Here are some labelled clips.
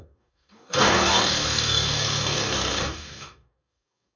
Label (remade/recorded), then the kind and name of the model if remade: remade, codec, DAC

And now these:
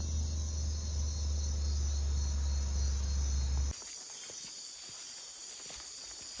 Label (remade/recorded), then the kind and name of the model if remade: recorded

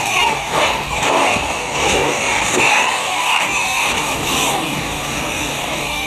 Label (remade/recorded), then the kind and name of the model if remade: remade, codec, DAC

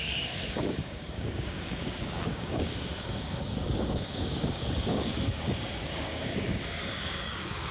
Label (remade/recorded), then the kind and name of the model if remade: remade, codec, DAC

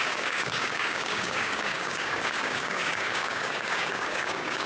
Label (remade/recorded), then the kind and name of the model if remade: remade, codec, DAC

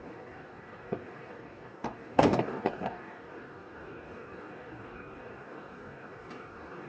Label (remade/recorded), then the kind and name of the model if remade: remade, codec, DAC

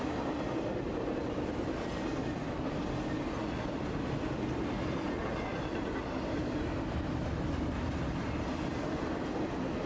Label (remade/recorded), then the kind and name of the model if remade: recorded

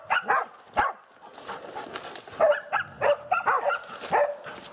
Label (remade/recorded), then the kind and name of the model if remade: recorded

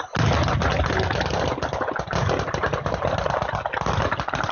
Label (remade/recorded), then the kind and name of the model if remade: recorded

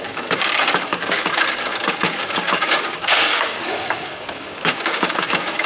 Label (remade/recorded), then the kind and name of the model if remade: remade, codec, DAC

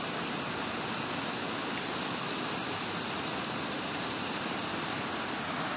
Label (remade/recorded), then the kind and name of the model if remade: recorded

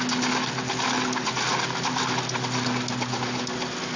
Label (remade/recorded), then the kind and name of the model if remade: recorded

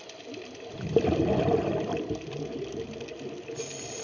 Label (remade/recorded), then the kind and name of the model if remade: recorded